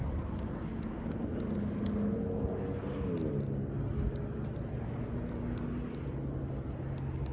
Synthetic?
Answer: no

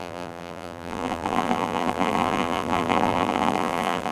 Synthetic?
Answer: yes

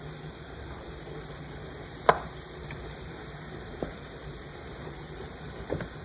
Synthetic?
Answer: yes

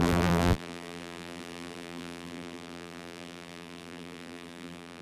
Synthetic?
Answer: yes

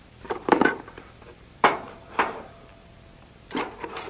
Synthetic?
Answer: yes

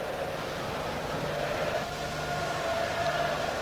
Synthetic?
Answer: yes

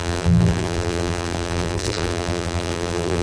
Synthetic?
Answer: yes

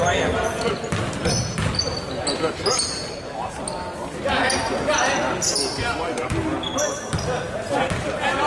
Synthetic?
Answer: no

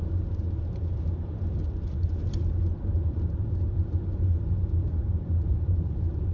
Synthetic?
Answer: yes